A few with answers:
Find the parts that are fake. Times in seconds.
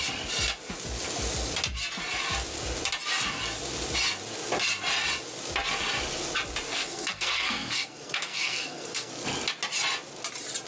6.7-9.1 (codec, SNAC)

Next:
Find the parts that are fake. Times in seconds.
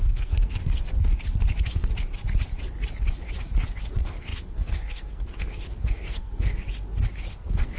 0.0-1.1 (codec, SNAC); 3.9-6.5; 7.3-7.8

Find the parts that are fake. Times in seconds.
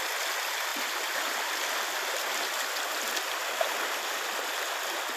none